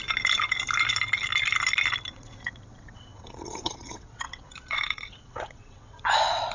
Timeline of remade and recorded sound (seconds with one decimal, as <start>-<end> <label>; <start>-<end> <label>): 0.0-2.1 recorded; 2.1-6.0 remade; 6.0-6.5 recorded